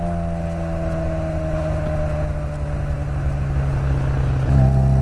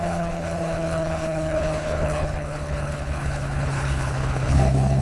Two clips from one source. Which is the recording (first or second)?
first